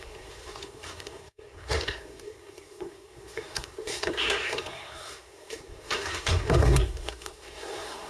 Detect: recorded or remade remade